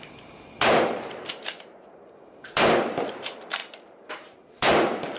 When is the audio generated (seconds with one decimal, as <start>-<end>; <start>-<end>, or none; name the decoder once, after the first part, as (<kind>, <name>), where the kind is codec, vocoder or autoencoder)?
0.0-5.2 (vocoder, BigVGAN v2)

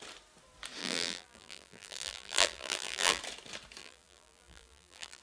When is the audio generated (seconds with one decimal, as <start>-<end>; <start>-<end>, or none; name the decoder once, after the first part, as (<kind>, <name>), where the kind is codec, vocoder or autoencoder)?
0.8-3.2 (vocoder, BigVGAN v2); 3.8-5.2

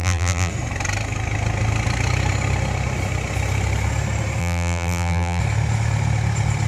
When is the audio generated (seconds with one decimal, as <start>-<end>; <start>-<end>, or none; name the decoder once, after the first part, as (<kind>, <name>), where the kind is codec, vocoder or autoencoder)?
0.0-0.5 (vocoder, BigVGAN v2); 4.4-5.4

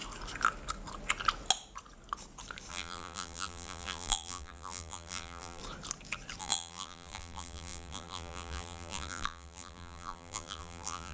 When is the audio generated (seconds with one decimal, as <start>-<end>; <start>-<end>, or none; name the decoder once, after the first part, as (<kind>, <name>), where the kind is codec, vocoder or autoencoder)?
2.7-5.6 (vocoder, BigVGAN v2); 6.4-11.1

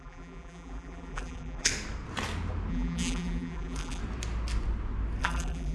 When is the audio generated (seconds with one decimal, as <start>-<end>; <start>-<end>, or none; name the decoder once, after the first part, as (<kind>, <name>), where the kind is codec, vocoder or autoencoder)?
0.0-1.7 (vocoder, BigVGAN v2); 2.7-4.0; 5.2-5.7